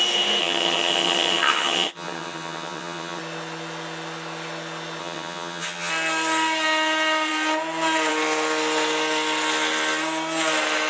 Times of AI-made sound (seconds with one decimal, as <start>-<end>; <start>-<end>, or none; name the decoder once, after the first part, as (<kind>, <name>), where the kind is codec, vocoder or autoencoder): 0.4-3.2 (vocoder, HiFi-GAN); 5.0-5.9